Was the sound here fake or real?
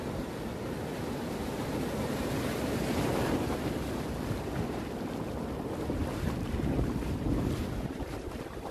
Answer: fake